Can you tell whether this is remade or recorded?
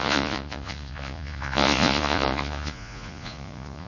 remade